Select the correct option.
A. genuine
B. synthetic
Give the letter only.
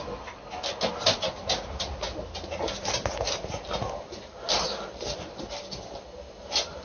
A